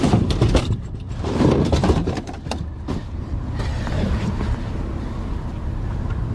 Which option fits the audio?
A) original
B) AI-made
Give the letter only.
B